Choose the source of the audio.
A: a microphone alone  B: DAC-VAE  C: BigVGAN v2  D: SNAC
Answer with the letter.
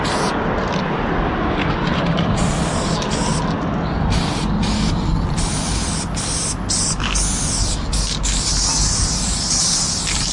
A